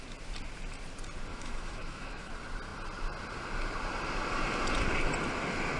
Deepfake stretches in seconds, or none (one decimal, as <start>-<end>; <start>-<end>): 1.3-2.3